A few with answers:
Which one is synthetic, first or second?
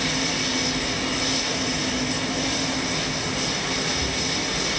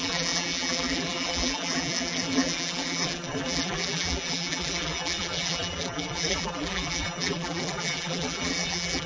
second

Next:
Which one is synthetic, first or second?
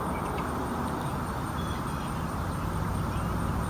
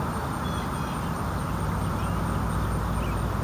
first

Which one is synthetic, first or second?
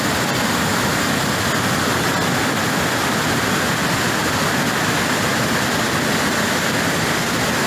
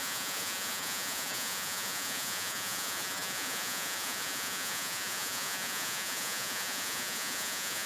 second